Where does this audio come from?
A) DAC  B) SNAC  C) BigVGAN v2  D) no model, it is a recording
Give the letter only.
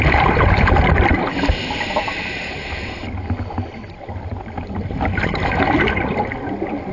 C